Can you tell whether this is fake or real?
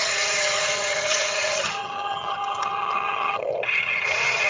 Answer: fake